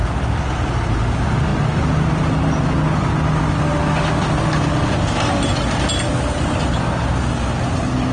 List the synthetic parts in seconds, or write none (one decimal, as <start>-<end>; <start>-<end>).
none